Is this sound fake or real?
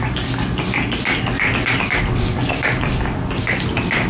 real